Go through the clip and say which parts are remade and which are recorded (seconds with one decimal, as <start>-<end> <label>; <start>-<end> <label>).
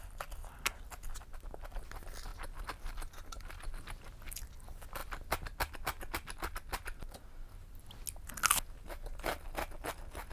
0.0-10.3 recorded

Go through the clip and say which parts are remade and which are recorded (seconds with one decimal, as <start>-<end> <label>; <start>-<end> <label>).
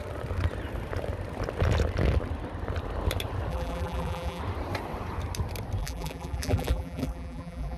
0.0-3.5 recorded; 3.5-4.4 remade; 4.4-5.8 recorded; 5.8-7.8 remade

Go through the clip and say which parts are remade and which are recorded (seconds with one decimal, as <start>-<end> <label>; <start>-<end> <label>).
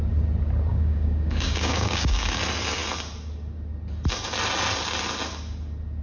0.0-0.7 recorded; 0.7-2.4 remade; 2.4-6.0 recorded